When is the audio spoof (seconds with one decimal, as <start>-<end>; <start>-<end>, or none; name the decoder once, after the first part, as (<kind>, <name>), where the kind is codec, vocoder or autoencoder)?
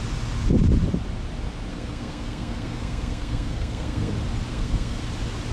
1.7-4.1 (codec, SNAC); 4.5-5.0